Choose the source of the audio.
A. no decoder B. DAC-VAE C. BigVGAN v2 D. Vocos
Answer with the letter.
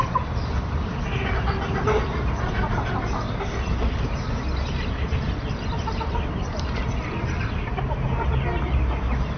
C